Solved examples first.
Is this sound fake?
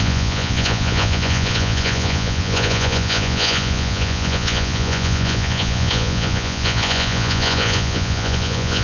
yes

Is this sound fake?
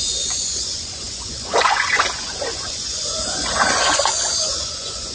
yes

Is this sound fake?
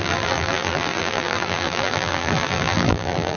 yes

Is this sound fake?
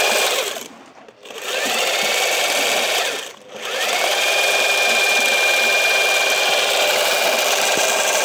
yes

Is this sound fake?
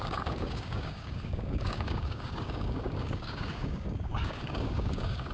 yes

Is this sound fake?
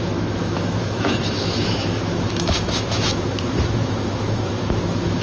yes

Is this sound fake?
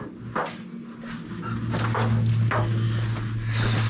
no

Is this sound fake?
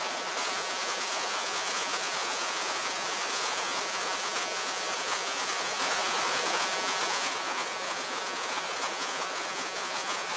yes